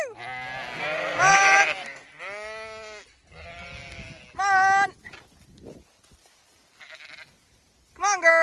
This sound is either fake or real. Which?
real